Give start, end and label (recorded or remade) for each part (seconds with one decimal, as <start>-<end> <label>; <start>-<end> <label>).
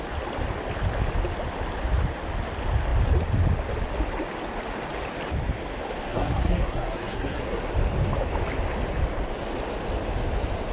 0.0-6.1 recorded; 6.1-7.7 remade; 7.7-10.7 recorded